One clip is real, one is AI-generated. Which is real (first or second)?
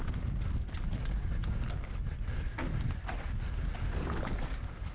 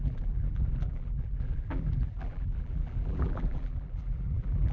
first